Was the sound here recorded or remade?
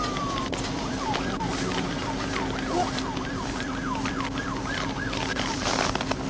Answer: remade